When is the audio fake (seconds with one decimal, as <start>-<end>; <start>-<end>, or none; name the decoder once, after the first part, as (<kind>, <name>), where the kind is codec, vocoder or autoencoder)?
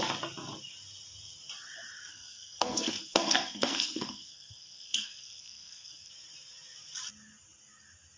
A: 2.1-6.1 (codec, SNAC)